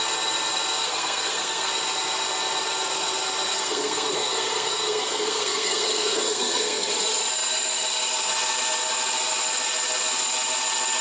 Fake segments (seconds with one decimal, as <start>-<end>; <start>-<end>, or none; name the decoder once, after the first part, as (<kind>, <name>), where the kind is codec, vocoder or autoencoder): 0.8-1.7 (codec, SNAC); 3.5-6.9